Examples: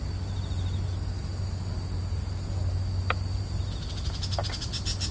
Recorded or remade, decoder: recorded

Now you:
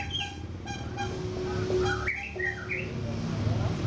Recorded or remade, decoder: recorded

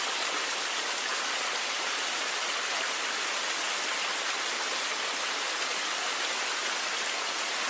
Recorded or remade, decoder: recorded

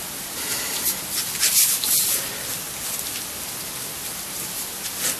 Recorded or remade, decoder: recorded